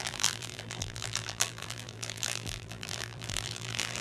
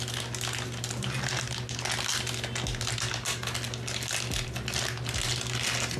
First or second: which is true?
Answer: second